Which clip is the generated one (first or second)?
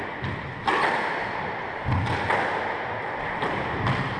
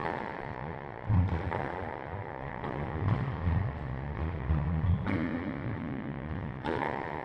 second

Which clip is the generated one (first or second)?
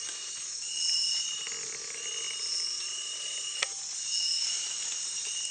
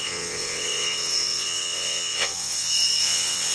second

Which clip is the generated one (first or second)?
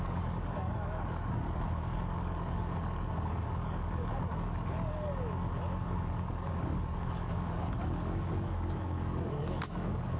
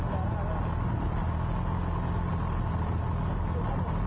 first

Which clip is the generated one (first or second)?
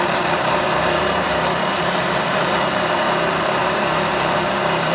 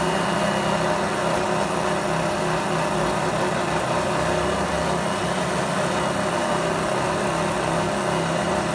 first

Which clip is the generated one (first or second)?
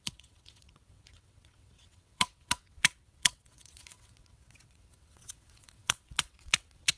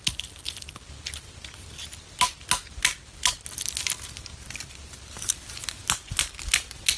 first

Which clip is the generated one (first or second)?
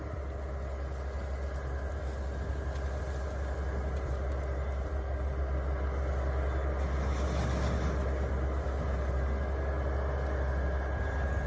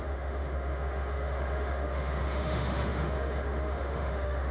second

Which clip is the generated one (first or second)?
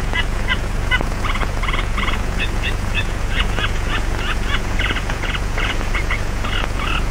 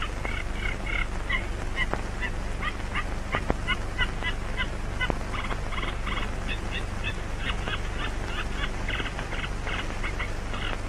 first